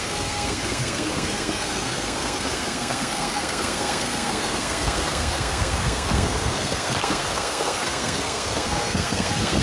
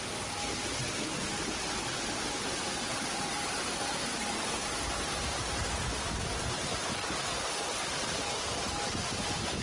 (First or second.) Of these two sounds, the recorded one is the second